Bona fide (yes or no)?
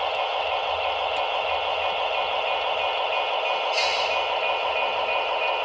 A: yes